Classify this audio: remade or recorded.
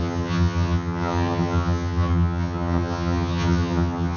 remade